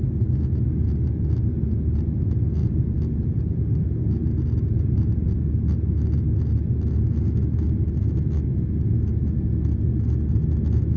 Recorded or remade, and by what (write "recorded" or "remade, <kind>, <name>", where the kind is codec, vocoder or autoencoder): recorded